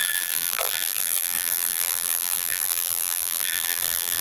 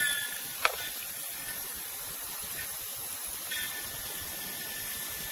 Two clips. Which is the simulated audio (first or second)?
first